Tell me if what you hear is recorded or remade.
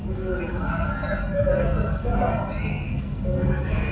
remade